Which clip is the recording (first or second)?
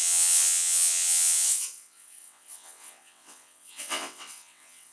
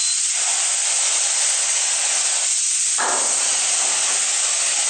second